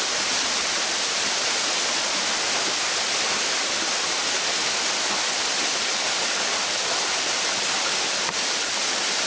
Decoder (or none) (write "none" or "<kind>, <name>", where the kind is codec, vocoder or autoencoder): none